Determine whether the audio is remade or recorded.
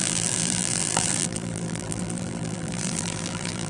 remade